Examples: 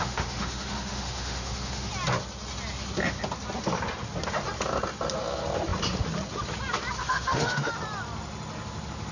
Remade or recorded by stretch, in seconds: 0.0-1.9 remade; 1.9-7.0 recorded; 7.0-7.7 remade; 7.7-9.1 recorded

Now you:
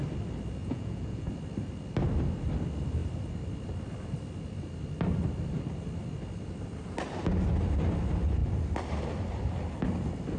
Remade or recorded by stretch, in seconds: 0.0-0.6 recorded; 0.6-1.3 remade; 1.3-10.4 recorded

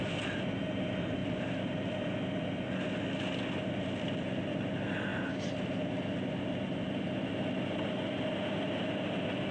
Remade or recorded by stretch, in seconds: 0.0-9.5 recorded

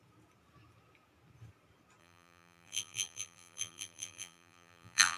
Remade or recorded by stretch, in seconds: 0.0-2.0 recorded; 2.0-5.2 remade

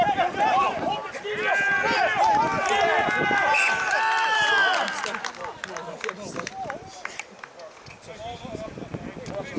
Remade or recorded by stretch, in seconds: 0.0-6.9 recorded; 6.9-7.4 remade; 7.4-9.6 recorded

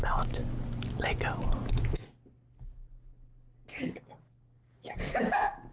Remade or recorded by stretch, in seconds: 0.0-0.4 remade; 0.4-3.8 recorded; 3.8-5.7 remade

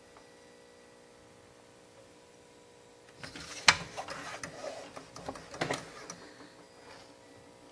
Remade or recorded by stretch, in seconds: 0.0-4.6 recorded; 4.6-5.5 remade; 5.5-7.7 recorded